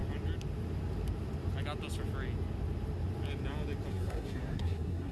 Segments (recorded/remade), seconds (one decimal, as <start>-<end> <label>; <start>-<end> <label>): 0.0-3.9 recorded; 3.9-5.1 remade